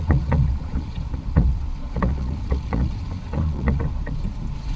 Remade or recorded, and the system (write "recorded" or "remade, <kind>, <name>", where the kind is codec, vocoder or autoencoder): remade, vocoder, Vocos